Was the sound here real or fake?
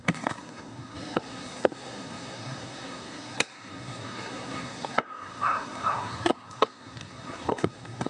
fake